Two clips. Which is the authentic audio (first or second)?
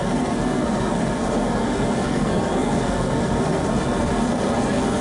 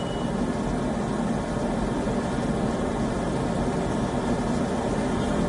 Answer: second